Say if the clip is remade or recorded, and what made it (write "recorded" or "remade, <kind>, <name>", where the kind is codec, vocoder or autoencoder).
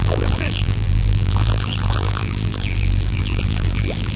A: remade, vocoder, BigVGAN v2